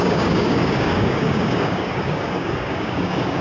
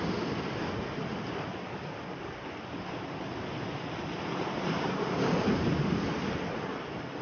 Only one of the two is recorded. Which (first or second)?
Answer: second